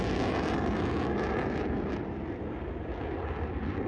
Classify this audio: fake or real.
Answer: real